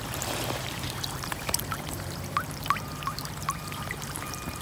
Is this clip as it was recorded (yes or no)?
no